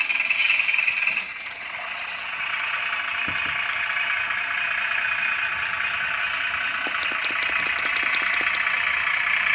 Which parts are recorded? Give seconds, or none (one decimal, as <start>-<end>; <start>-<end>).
0.0-1.3; 2.8-9.5